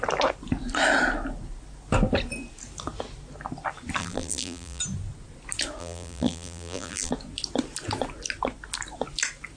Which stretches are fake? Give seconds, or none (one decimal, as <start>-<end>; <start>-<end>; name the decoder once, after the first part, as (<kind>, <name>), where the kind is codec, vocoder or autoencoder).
4.0-4.8 (vocoder, BigVGAN v2); 5.8-7.1